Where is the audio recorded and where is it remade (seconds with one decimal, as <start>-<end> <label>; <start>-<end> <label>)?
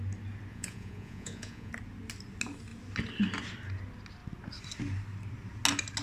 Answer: 0.0-0.5 recorded; 0.5-1.7 remade; 1.7-6.0 recorded